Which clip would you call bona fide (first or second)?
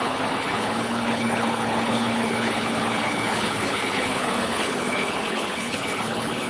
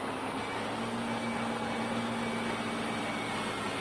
second